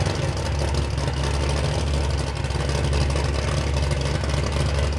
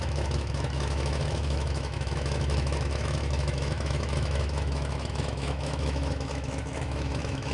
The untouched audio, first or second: first